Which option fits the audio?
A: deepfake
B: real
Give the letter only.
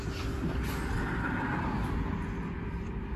B